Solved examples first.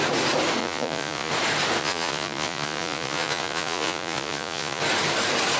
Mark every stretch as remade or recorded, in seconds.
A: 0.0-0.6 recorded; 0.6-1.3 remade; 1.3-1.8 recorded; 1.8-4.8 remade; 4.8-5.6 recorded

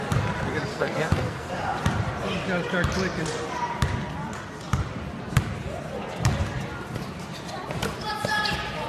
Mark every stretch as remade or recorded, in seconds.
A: 0.0-0.7 recorded; 0.7-1.5 remade; 1.5-8.9 recorded

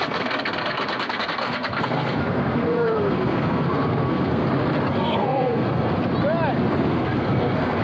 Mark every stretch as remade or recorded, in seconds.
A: 0.0-4.4 remade; 4.4-4.9 recorded; 4.9-6.0 remade; 6.0-6.9 recorded; 6.9-7.8 remade

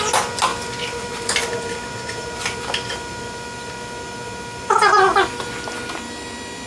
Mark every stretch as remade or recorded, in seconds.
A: 0.0-0.5 recorded; 0.5-1.5 remade; 1.5-6.7 recorded

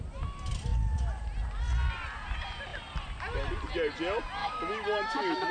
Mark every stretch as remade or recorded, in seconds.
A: 0.0-4.4 recorded; 4.4-5.5 remade

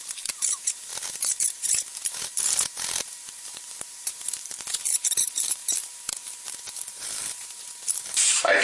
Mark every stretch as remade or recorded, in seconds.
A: 0.0-8.6 remade

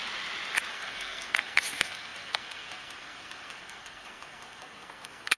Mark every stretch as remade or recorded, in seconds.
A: 0.0-0.7 recorded; 0.7-5.4 remade

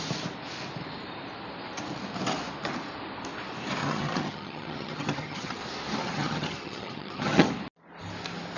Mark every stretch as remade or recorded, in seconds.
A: 0.0-3.8 recorded; 3.8-5.6 remade; 5.6-6.0 recorded; 6.0-7.5 remade; 7.5-8.6 recorded